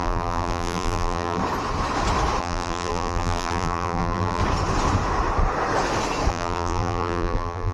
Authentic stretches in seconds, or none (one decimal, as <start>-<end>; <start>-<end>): 1.4-2.4; 4.4-6.3